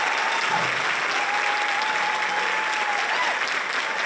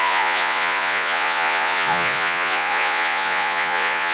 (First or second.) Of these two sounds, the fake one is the second